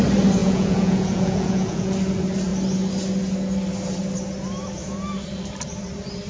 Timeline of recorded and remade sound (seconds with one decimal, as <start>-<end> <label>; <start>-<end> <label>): 0.0-0.4 recorded; 0.4-1.9 remade; 1.9-6.3 recorded